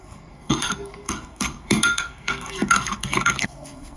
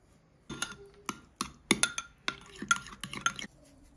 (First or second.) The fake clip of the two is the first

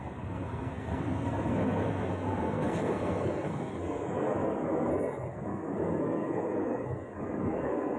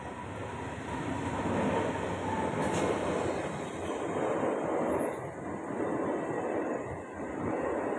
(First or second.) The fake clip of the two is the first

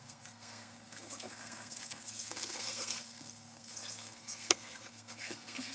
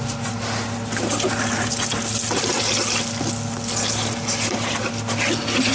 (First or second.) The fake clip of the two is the first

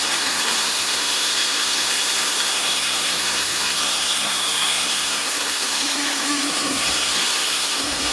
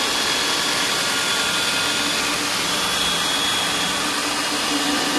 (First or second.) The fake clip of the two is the first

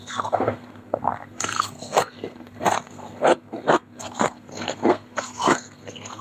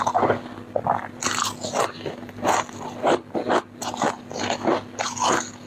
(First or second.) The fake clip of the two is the first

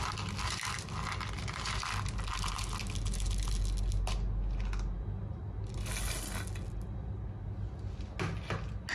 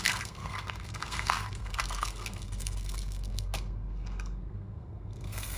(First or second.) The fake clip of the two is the second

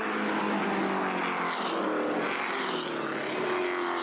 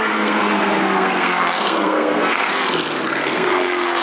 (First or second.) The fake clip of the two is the second